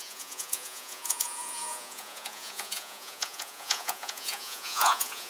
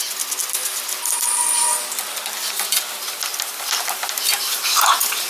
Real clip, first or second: second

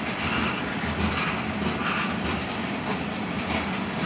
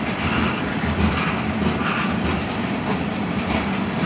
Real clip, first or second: first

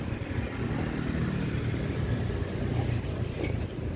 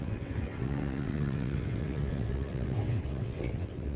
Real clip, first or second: first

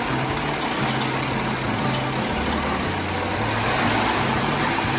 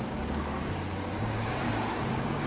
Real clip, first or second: first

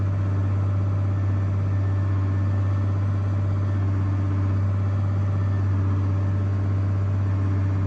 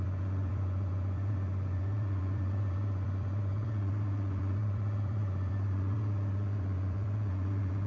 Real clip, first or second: first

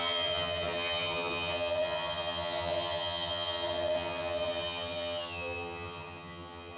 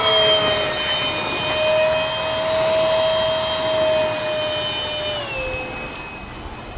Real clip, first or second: second